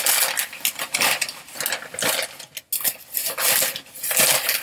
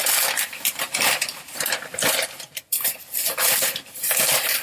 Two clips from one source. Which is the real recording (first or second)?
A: first